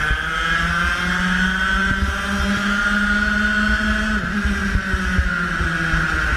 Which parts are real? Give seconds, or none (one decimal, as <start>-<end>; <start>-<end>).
0.0-6.4